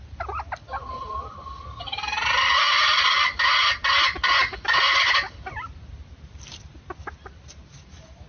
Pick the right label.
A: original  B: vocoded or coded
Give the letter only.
A